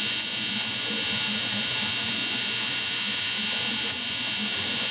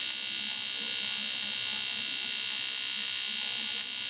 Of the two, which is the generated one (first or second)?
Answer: first